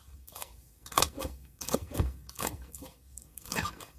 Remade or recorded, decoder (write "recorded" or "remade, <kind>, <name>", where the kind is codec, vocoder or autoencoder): remade, codec, SNAC